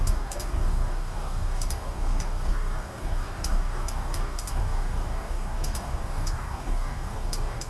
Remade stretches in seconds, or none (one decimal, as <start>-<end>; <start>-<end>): 0.0-7.7